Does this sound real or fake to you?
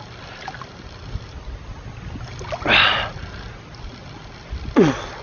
real